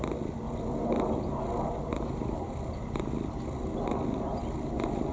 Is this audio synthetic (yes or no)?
no